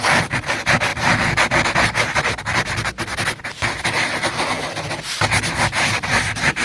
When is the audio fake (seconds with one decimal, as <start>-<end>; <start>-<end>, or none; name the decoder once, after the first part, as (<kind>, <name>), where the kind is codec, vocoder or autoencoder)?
none